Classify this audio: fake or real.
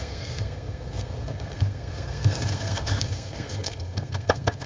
fake